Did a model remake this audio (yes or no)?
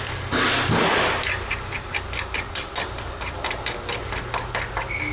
no